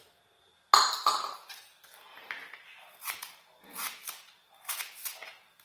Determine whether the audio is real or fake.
real